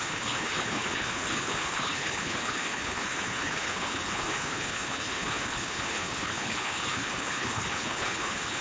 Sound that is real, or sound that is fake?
fake